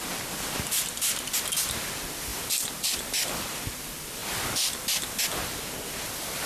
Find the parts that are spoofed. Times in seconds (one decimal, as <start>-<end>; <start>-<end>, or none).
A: none